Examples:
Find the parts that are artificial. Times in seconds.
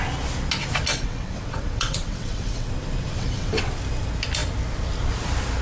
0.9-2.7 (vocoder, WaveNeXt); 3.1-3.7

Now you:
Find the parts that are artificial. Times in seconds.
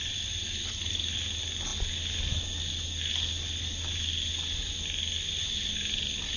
none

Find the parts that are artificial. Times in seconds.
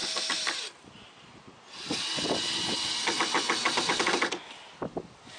none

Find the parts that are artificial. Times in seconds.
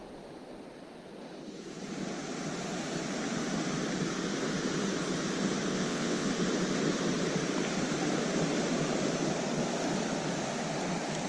5.7-6.3 (vocoder, WaveNeXt)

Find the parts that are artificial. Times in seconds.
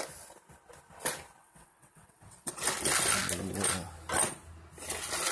1.4-2.6 (vocoder, WaveNeXt)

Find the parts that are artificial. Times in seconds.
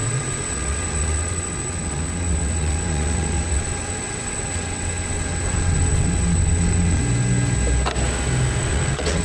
0.0-7.0 (vocoder, WaveNeXt); 8.6-9.2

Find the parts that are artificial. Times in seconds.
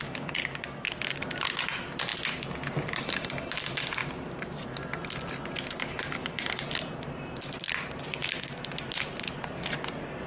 none